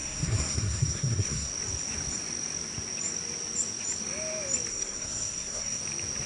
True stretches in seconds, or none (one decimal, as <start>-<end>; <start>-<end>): 1.5-4.7; 5.8-6.3